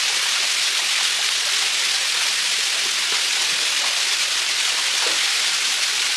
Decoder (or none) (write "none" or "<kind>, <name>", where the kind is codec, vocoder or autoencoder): none